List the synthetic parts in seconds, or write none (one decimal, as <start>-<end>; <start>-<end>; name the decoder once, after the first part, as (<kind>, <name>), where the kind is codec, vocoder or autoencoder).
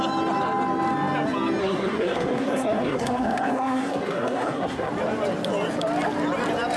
1.6-4.9 (codec, SNAC)